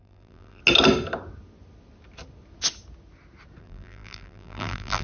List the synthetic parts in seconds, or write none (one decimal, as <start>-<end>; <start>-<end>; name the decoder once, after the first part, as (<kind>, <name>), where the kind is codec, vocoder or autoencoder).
0.0-0.6 (vocoder, BigVGAN v2); 3.6-5.0